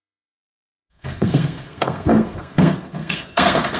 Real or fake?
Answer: fake